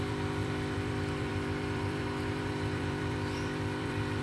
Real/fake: fake